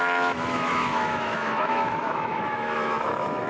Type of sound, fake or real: fake